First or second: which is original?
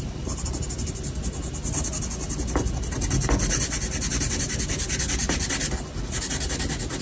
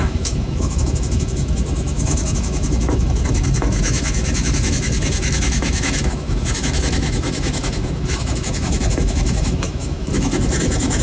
first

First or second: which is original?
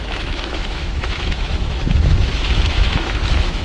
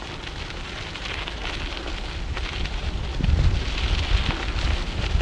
second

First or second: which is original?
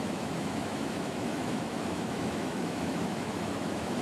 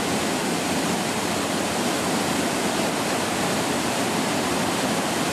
second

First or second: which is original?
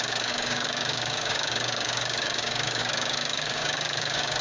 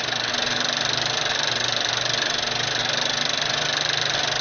second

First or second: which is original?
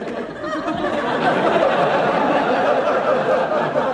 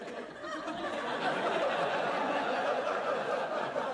first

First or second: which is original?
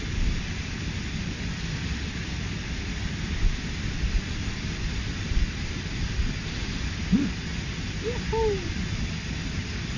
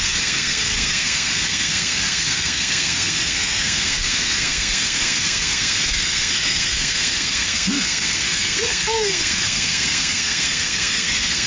first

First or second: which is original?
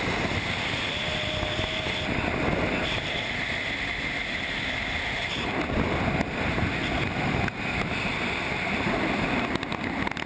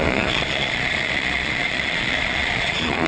first